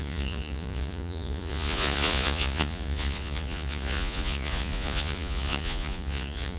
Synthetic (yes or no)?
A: yes